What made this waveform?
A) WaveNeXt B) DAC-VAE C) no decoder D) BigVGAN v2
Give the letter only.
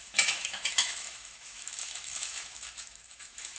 B